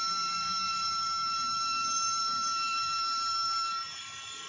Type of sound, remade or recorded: recorded